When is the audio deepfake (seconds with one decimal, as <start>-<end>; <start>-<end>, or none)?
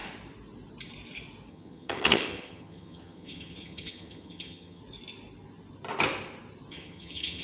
1.5-4.8; 6.7-7.4